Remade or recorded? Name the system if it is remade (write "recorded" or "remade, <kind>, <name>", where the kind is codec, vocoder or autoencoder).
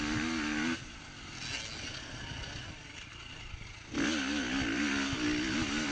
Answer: recorded